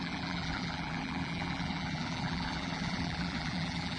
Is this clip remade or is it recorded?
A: remade